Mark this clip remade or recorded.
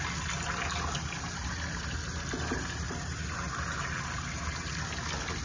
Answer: recorded